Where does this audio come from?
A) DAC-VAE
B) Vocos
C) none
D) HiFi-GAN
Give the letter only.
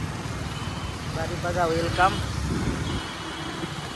C